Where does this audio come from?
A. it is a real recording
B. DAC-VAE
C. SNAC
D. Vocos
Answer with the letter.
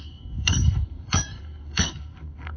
C